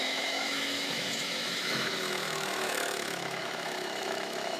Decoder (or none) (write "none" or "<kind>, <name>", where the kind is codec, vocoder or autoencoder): autoencoder, DAC-VAE